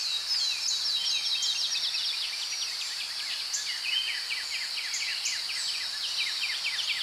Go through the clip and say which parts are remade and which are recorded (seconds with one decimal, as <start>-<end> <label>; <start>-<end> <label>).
0.0-7.0 recorded